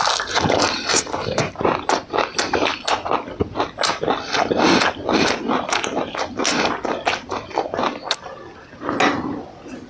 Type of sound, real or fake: real